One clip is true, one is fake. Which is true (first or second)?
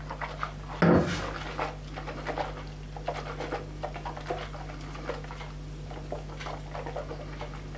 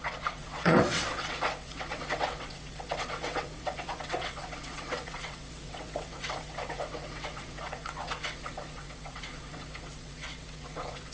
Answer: first